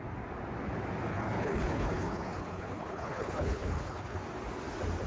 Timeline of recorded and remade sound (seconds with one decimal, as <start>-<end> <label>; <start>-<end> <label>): 0.0-1.1 recorded; 1.1-4.2 remade; 4.2-5.1 recorded